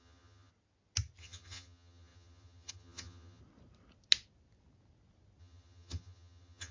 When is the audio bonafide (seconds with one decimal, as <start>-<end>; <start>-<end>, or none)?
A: 0.5-1.2; 3.4-5.4